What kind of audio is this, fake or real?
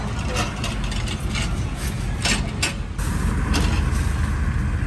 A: real